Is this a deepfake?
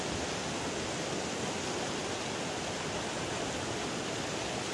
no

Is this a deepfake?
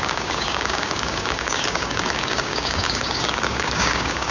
yes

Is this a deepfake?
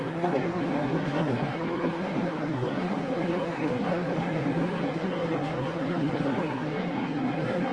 yes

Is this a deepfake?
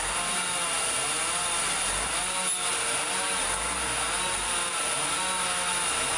no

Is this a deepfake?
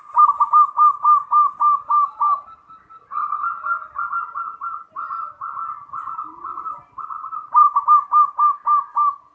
no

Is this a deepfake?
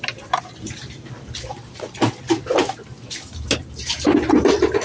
no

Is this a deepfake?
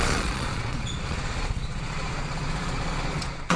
yes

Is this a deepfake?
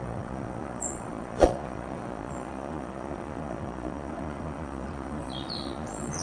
yes